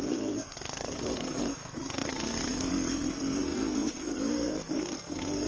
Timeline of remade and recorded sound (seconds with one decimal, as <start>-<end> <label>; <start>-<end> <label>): 0.0-5.5 remade